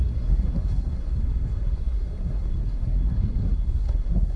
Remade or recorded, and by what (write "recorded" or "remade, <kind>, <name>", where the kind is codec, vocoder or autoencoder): remade, codec, SNAC